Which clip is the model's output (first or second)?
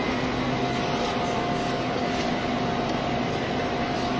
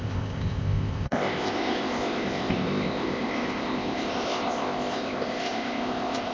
second